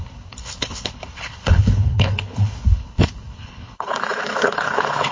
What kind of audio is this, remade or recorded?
remade